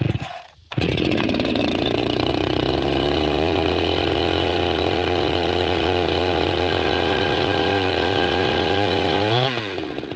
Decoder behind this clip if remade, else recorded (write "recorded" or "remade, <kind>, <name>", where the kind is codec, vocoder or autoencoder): remade, vocoder, Vocos